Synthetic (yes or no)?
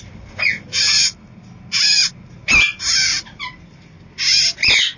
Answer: no